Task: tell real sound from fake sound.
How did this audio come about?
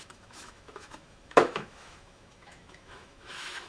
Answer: fake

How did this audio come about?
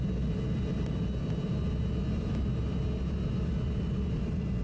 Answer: real